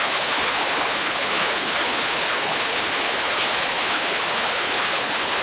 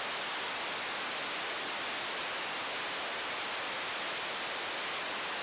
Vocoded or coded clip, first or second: first